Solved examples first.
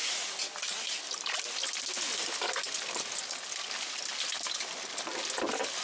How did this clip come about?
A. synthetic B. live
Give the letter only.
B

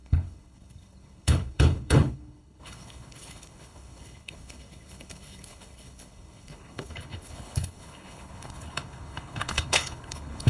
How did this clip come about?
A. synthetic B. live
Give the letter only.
A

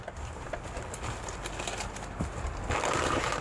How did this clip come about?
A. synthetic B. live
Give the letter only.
B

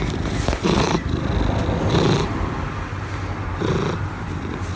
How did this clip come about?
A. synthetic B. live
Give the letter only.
B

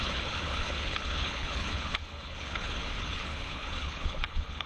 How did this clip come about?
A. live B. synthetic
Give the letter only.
B